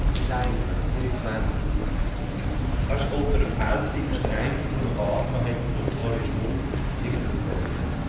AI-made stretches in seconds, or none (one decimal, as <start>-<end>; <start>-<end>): 1.8-4.1